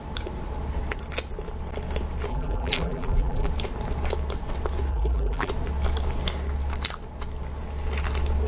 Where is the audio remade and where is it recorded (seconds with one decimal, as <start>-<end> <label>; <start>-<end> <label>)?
0.0-2.3 recorded; 2.3-3.5 remade; 3.5-4.9 recorded; 4.9-5.5 remade; 5.5-8.5 recorded